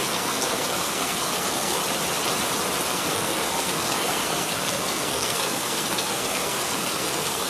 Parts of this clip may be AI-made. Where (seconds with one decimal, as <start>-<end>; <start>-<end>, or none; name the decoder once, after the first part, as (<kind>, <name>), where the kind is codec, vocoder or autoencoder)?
0.0-1.8 (codec, SNAC); 2.9-7.5